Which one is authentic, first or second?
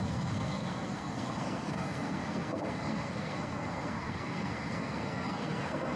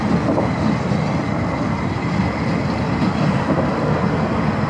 second